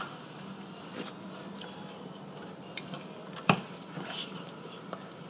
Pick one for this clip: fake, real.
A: fake